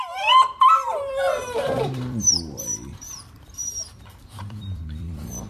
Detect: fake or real fake